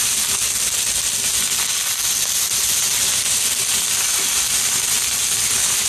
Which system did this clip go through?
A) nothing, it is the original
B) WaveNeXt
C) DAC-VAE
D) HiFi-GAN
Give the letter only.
A